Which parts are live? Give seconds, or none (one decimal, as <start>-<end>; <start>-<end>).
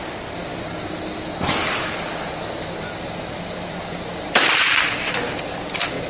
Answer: 0.0-6.1